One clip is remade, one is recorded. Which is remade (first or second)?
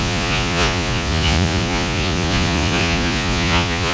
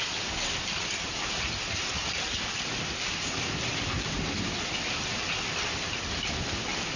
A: first